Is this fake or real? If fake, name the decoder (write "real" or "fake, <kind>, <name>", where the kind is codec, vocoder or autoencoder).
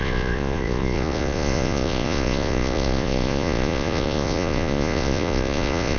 fake, vocoder, Vocos